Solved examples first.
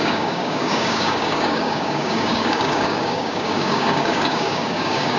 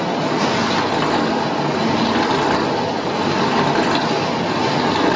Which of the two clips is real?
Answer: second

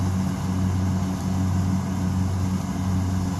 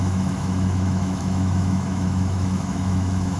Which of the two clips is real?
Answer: first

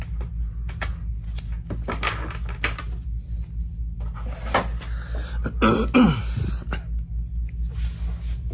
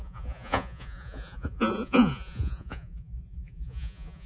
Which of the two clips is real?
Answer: first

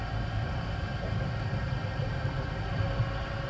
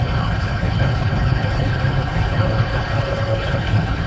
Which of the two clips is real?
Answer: first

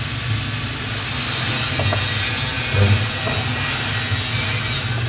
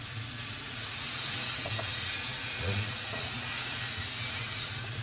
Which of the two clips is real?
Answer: first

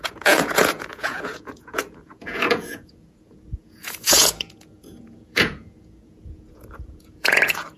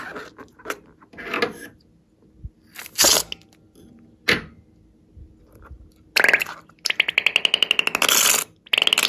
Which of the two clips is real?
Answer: second